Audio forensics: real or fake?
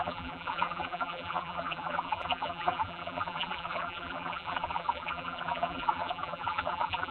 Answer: fake